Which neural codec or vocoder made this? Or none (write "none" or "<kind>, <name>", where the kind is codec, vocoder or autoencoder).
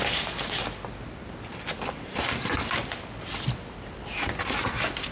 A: none